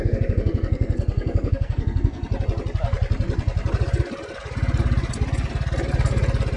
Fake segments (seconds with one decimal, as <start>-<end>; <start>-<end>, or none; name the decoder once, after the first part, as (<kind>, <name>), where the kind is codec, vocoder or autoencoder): 0.0-2.2 (codec, SNAC)